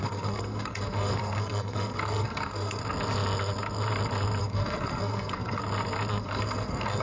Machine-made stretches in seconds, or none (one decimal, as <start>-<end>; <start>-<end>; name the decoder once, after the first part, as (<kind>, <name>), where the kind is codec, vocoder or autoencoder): 0.0-2.8 (codec, SNAC); 4.4-5.6; 6.2-7.0